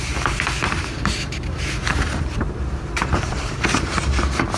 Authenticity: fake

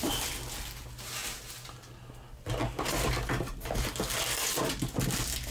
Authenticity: real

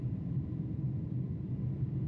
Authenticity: real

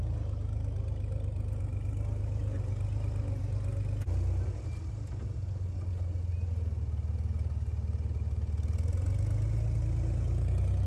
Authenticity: real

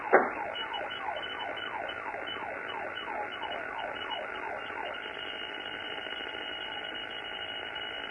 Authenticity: real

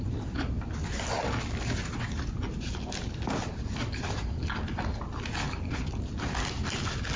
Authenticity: real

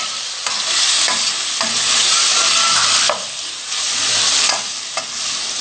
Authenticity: real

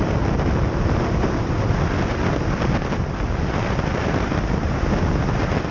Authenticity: real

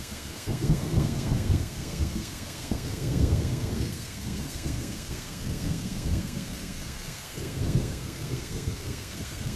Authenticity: fake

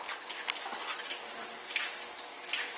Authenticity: real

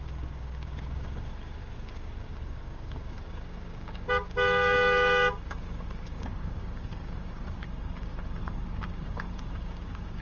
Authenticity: fake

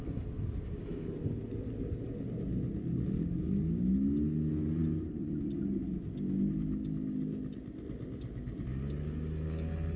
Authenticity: real